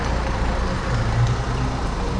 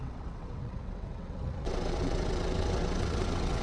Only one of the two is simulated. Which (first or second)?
second